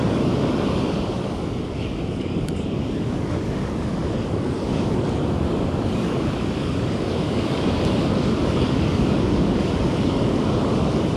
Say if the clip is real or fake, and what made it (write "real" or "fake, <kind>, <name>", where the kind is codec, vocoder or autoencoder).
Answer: fake, codec, DAC